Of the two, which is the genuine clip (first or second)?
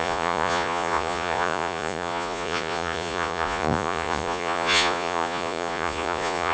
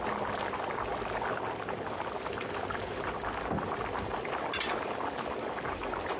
second